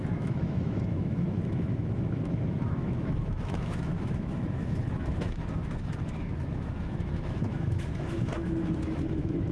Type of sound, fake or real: fake